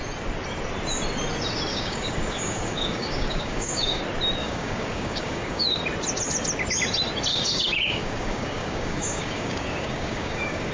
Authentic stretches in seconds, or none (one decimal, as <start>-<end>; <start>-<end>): 0.0-1.7; 4.0-4.4; 5.8-7.3